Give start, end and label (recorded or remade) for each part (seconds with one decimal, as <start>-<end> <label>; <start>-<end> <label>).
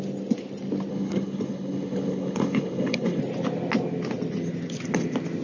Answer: 0.0-0.9 recorded; 0.9-3.2 remade; 3.2-5.4 recorded